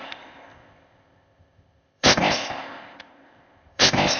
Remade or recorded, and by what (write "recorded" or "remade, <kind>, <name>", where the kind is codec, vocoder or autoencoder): remade, codec, ZipCodec